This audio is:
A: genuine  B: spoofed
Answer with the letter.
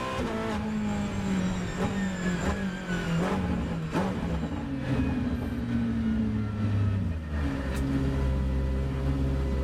A